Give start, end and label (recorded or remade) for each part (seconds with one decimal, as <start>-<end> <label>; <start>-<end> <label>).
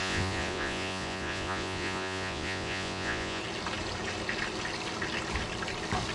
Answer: 0.0-3.4 remade; 3.4-6.1 recorded